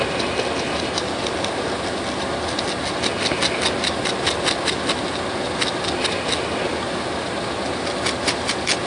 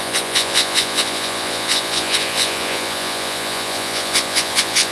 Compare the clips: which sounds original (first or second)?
first